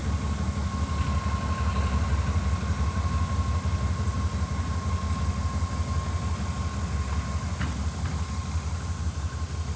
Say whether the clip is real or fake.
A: real